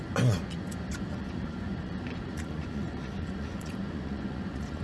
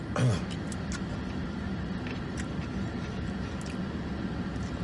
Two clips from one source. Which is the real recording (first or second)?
second